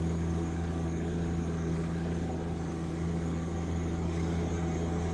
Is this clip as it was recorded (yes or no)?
no